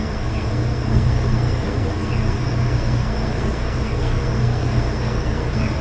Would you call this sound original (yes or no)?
no